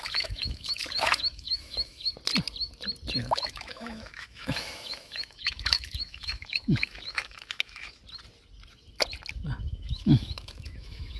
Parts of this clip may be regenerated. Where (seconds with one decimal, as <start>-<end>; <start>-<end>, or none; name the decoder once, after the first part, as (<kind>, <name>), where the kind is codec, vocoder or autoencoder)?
0.0-2.1 (autoencoder, DAC-VAE); 3.2-8.0; 9.7-11.2